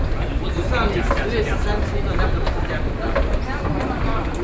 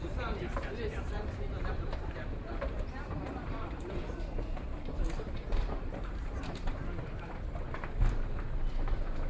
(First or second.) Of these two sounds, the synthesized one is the second